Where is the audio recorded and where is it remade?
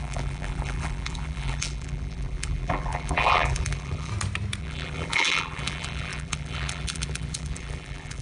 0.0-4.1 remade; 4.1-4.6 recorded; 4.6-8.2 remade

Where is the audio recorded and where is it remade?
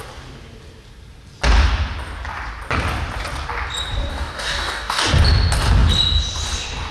0.0-4.1 recorded; 4.1-5.0 remade; 5.0-6.9 recorded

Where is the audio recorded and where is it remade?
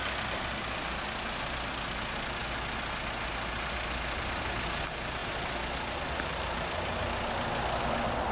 0.0-8.3 recorded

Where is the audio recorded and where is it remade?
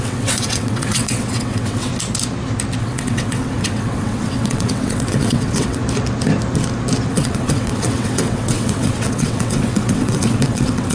0.0-1.9 remade; 1.9-2.8 recorded; 2.8-5.8 remade; 5.8-7.1 recorded; 7.1-10.9 remade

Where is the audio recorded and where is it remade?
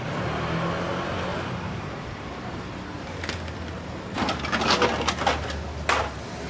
0.0-1.3 recorded; 1.3-2.8 remade; 2.8-6.5 recorded